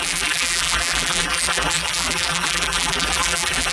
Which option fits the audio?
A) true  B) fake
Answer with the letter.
B